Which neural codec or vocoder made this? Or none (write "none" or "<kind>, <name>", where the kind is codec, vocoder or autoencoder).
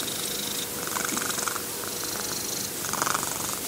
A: none